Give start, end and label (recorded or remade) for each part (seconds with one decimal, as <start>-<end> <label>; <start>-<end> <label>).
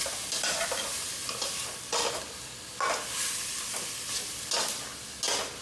0.0-5.6 recorded